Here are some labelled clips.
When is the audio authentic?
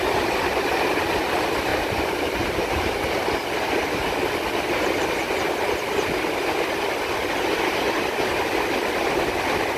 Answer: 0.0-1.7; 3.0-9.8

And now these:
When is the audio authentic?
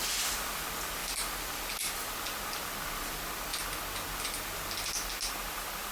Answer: 0.0-5.9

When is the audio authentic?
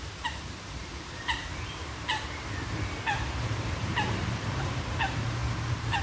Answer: 5.4-6.0